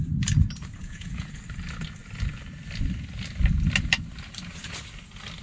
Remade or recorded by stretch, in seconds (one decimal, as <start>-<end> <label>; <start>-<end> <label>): 0.0-0.8 recorded; 0.8-1.4 remade; 1.4-5.4 recorded

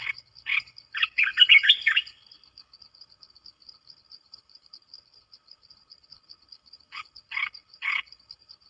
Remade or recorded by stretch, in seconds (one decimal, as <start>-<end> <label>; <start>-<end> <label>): 0.0-8.7 remade

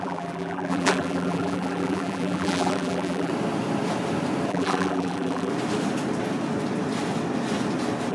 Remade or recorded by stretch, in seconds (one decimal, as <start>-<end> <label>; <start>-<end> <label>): 0.0-3.3 remade; 3.3-4.5 recorded; 4.5-5.5 remade; 5.5-8.1 recorded

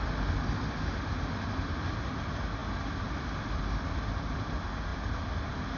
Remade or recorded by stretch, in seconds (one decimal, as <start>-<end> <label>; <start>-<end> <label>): 0.0-5.8 recorded

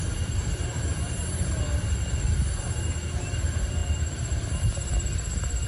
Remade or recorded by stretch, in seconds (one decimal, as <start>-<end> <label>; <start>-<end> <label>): 0.0-3.8 recorded; 3.8-5.7 remade

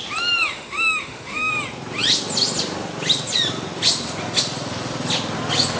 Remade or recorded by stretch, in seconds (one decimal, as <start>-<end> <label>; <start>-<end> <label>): 0.0-0.5 recorded; 0.5-1.5 remade; 1.5-5.8 recorded

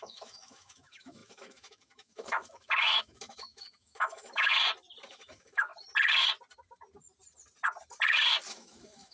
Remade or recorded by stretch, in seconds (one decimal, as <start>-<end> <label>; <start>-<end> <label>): 0.0-4.5 remade; 4.5-5.1 recorded; 5.1-5.7 remade; 5.7-8.5 recorded; 8.5-9.1 remade